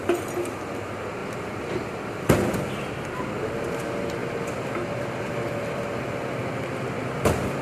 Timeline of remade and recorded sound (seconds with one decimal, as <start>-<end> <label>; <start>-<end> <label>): 0.0-7.6 remade